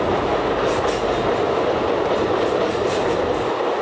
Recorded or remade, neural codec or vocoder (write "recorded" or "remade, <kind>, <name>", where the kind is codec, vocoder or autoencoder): recorded